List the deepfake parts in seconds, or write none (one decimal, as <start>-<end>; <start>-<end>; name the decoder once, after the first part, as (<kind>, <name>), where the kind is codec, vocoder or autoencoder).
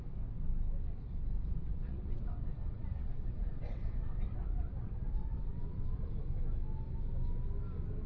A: 0.0-0.5 (vocoder, WaveNeXt); 1.4-6.1